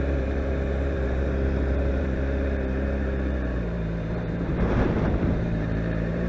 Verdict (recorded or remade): remade